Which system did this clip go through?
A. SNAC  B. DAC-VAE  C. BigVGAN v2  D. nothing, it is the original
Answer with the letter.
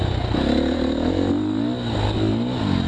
D